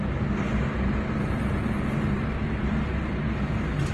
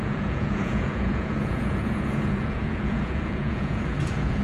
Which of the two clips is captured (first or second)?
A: first